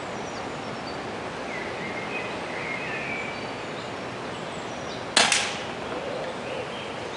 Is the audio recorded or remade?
recorded